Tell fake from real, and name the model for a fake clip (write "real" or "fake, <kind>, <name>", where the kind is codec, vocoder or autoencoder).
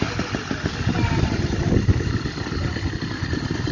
real